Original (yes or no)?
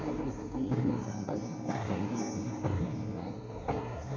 no